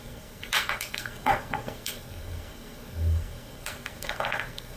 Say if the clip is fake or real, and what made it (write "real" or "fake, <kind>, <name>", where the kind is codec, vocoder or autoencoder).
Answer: fake, codec, SNAC